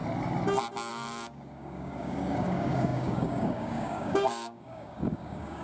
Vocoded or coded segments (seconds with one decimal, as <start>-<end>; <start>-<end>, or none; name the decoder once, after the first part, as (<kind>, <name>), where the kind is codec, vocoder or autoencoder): 0.9-5.6 (codec, DAC)